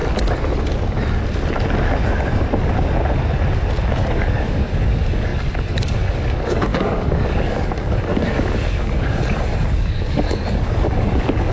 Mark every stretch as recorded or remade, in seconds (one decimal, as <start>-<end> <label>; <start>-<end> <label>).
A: 0.0-3.9 recorded; 3.9-11.5 remade